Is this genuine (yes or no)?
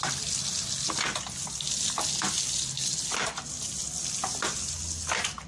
yes